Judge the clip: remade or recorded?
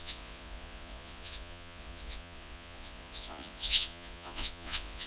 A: remade